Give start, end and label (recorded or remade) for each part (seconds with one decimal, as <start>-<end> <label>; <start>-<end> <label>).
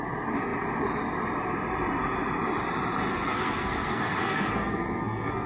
0.0-3.1 recorded; 3.1-5.5 remade